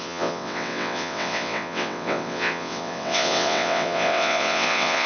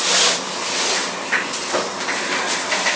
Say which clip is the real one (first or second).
second